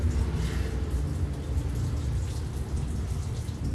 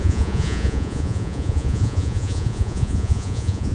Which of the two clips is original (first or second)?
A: first